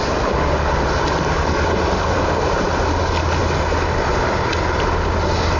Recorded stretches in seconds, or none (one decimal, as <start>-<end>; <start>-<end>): 0.0-5.6